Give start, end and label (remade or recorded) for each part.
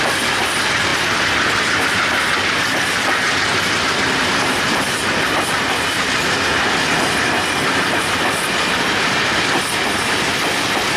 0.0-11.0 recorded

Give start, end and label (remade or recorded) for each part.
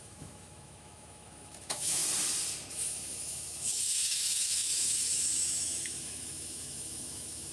0.0-2.0 remade; 2.0-2.7 recorded; 2.7-7.5 remade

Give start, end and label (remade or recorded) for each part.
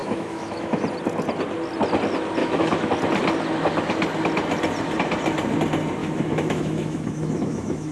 0.0-0.8 remade; 0.8-2.4 recorded; 2.4-2.9 remade; 2.9-6.0 recorded; 6.0-7.9 remade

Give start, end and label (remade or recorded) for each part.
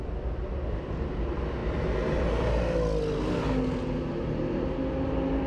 0.0-5.5 recorded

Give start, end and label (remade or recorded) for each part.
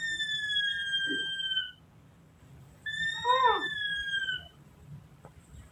0.0-5.7 recorded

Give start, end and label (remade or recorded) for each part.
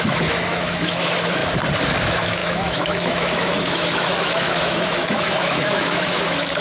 0.0-1.4 remade; 1.4-2.0 recorded; 2.0-6.6 remade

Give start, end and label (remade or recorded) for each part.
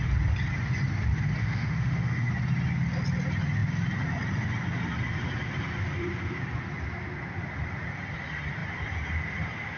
0.0-1.4 recorded; 1.4-2.3 remade; 2.3-9.8 recorded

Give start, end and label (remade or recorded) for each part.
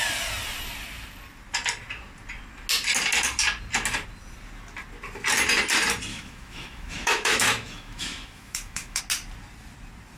0.0-6.1 recorded; 6.1-9.0 remade; 9.0-10.2 recorded